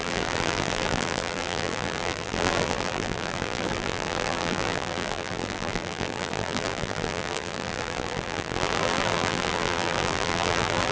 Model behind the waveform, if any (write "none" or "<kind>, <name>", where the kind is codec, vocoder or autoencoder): vocoder, BigVGAN v2